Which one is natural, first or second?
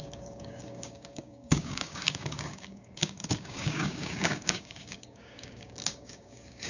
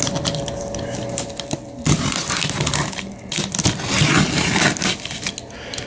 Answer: second